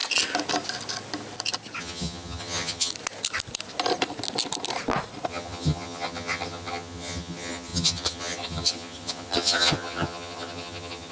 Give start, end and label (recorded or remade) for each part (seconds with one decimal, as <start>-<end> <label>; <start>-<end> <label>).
0.0-1.8 recorded; 1.8-2.9 remade; 2.9-5.3 recorded; 5.3-11.1 remade